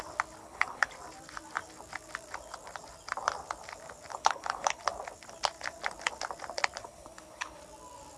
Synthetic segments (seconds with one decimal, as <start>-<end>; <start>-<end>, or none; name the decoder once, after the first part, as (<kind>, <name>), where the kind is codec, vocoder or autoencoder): 0.4-0.9 (codec, HILCodec); 4.1-4.8; 6.8-7.6